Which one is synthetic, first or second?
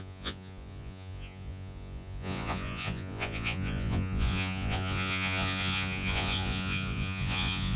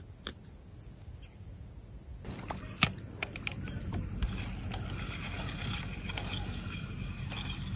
first